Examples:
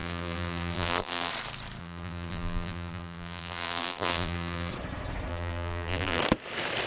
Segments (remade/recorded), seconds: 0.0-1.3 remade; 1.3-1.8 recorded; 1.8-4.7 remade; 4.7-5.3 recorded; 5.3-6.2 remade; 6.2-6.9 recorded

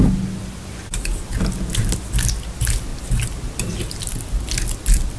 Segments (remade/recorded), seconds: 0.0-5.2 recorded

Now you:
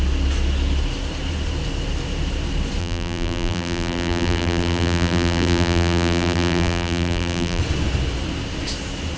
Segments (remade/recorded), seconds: 0.0-2.8 recorded; 2.8-7.6 remade; 7.6-9.2 recorded